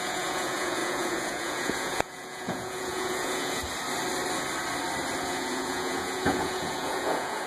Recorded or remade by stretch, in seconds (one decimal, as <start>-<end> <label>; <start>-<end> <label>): 0.0-3.6 remade; 3.6-5.2 recorded; 5.2-7.5 remade